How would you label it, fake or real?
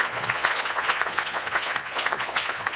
fake